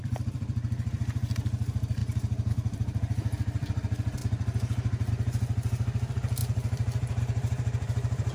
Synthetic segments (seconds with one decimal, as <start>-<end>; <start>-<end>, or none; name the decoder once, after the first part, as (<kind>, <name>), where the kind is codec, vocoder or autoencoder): 0.0-2.0 (vocoder, BigVGAN v2); 2.5-4.2; 5.1-8.3